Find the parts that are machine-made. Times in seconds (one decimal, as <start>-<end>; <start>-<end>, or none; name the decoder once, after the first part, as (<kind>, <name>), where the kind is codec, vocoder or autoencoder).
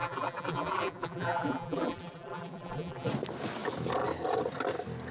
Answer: 0.0-3.1 (vocoder, BigVGAN v2)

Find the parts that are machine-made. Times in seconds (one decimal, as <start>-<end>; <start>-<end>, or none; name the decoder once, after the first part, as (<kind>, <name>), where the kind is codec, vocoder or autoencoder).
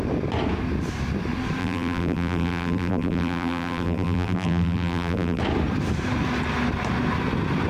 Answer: 1.6-5.4 (vocoder, BigVGAN v2)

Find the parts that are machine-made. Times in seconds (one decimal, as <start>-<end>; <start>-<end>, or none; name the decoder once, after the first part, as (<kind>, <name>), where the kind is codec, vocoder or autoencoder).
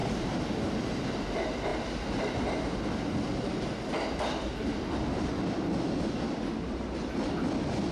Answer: none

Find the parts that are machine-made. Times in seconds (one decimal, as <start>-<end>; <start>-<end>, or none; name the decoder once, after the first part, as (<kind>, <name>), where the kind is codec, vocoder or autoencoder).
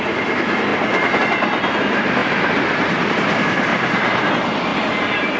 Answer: 0.7-1.2 (vocoder, BigVGAN v2); 3.7-4.3; 4.7-5.4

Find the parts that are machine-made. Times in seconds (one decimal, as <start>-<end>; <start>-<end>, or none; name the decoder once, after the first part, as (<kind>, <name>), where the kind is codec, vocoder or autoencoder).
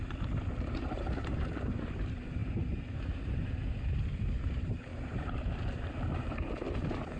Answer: 0.0-7.2 (vocoder, BigVGAN v2)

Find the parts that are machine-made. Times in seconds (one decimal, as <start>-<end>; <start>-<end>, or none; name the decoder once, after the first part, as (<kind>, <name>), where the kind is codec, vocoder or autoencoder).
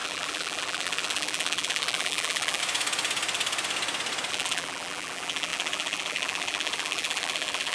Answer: 0.0-2.6 (vocoder, BigVGAN v2); 4.3-7.7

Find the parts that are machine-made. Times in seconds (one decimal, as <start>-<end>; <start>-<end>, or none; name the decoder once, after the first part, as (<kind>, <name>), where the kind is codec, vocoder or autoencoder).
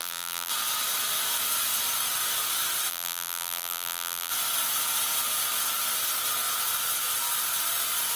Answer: 0.0-0.5 (vocoder, BigVGAN v2); 2.9-4.3